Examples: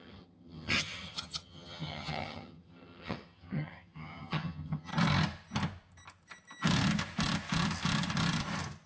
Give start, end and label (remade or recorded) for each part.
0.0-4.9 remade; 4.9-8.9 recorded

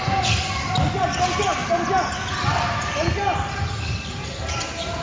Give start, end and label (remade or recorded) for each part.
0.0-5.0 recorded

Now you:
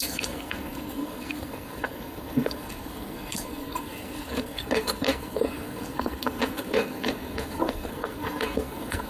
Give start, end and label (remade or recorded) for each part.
0.0-9.1 remade

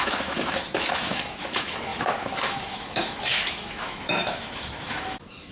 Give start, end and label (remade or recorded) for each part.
0.0-5.5 remade